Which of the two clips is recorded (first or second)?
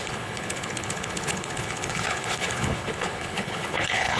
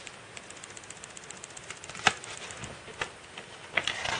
second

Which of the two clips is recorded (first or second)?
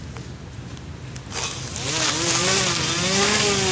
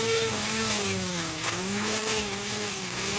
first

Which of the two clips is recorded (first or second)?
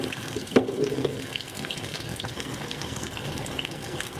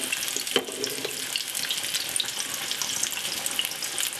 second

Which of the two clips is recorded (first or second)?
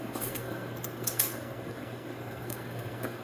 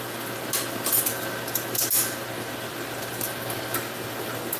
second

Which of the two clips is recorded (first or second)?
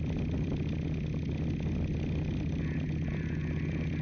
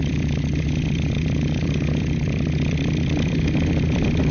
first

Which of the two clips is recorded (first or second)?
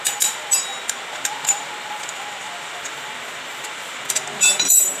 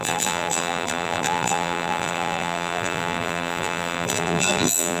first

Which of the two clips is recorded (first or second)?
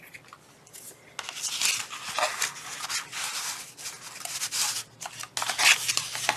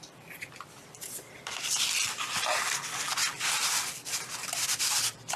first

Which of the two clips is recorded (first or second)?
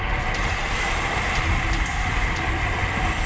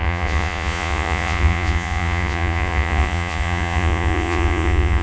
first